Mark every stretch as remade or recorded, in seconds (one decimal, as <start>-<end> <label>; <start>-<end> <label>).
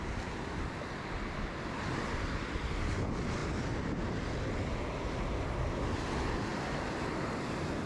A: 0.0-7.9 recorded